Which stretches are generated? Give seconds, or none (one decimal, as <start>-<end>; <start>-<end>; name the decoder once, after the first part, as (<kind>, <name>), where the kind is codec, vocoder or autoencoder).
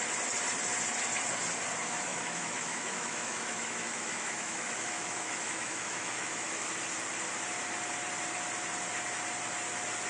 2.1-6.7 (autoencoder, DAC-VAE)